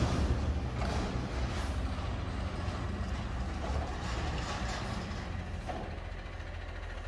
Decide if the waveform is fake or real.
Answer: real